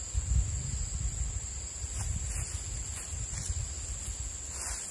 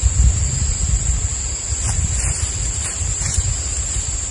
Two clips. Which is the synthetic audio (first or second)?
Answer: second